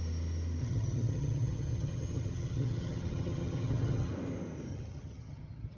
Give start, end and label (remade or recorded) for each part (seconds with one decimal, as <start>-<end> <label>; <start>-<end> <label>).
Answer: 0.0-0.6 recorded; 0.6-4.1 remade; 4.1-4.7 recorded; 4.7-5.8 remade